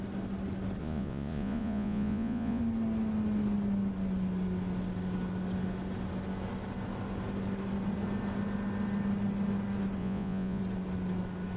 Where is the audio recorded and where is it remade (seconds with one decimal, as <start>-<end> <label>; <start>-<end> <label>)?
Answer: 0.0-0.8 recorded; 0.8-2.6 remade; 2.6-10.0 recorded; 10.0-10.6 remade; 10.6-11.6 recorded